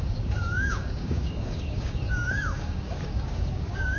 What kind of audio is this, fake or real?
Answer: fake